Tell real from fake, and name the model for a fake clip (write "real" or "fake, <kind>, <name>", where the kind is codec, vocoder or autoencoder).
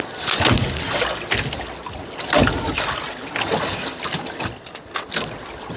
real